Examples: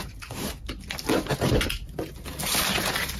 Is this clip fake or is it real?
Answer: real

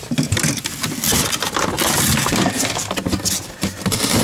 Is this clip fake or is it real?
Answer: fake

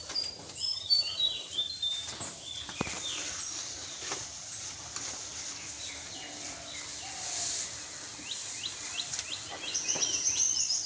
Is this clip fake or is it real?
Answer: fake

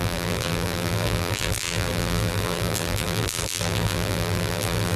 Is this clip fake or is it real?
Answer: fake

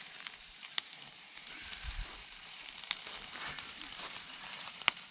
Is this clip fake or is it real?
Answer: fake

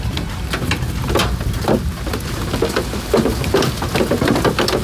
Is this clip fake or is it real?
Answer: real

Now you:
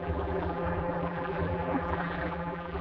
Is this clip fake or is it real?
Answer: fake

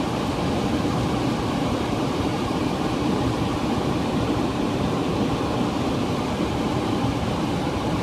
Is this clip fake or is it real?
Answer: fake